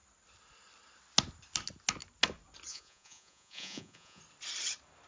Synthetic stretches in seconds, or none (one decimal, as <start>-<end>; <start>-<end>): 2.7-4.2

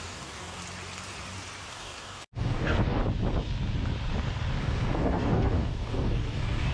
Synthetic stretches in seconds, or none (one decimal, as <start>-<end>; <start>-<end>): 0.0-0.6; 1.7-3.0; 4.6-6.7

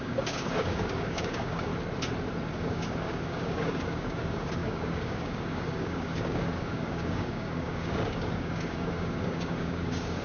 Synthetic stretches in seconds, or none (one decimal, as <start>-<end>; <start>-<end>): 0.0-1.7; 2.5-10.2

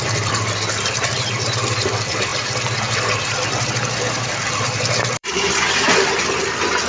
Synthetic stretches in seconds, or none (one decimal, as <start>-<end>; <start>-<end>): 0.0-6.9